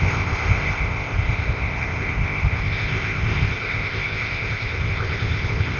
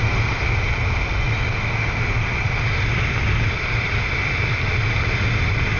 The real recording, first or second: second